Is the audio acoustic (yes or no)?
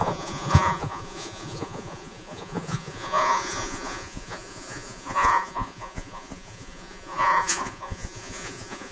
no